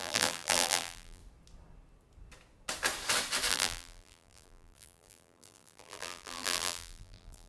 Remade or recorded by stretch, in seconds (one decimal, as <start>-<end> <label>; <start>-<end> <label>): 0.0-1.2 remade; 1.2-3.5 recorded; 3.5-7.5 remade